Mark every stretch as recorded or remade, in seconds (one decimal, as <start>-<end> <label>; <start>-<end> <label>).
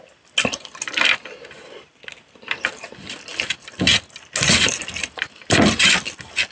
0.0-6.5 recorded